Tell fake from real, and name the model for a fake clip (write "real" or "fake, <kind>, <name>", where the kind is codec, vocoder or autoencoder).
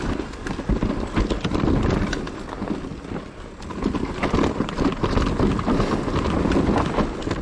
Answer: real